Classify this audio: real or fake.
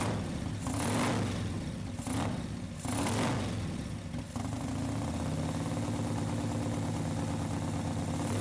real